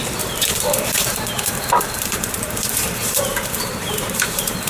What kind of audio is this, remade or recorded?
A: remade